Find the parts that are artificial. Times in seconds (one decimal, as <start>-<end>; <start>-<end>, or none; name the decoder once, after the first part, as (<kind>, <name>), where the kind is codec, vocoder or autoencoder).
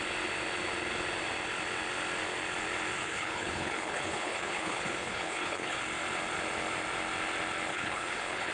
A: 3.0-5.8 (codec, HILCodec); 7.7-8.5